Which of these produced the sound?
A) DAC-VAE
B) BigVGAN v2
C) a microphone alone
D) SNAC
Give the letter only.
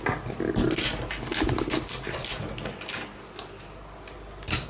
C